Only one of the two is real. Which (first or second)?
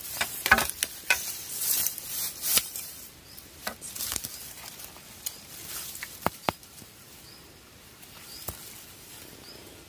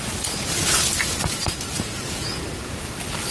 second